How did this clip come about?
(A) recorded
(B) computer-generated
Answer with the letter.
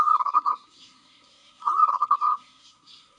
B